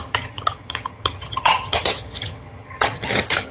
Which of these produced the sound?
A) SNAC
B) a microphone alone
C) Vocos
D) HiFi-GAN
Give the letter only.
D